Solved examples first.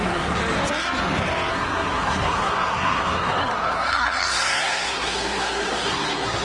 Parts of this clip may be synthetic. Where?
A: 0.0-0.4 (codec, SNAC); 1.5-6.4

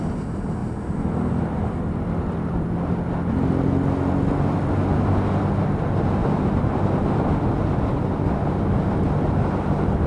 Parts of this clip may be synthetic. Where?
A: none

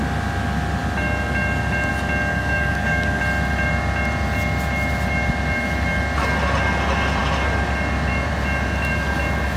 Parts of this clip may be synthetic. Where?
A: 2.3-3.2 (codec, DAC)

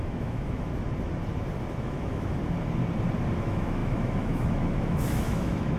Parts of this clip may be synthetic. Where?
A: 0.0-0.7 (autoencoder, DAC-VAE); 1.7-2.4; 3.4-5.8

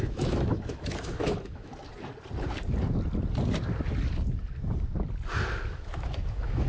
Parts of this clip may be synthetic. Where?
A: 0.0-1.7 (autoencoder, DAC-VAE); 5.7-6.7

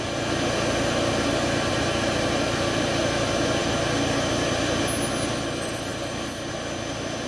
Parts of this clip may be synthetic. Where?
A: none